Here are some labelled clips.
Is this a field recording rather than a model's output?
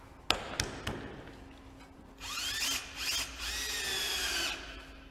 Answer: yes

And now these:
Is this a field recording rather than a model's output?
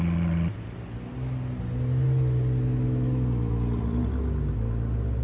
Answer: yes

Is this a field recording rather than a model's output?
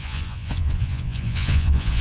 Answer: no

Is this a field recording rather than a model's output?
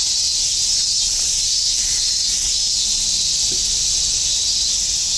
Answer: yes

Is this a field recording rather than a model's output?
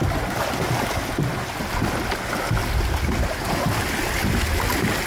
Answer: yes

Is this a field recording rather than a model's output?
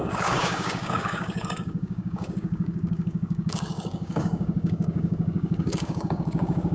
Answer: no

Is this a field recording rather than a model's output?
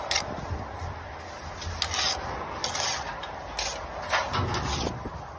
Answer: yes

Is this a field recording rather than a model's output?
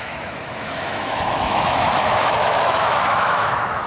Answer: no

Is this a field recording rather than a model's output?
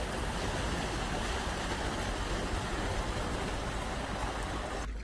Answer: yes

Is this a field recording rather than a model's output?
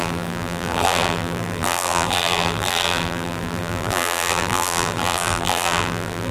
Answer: no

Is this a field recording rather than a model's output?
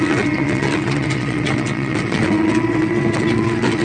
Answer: no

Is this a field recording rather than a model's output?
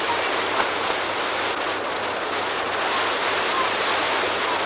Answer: yes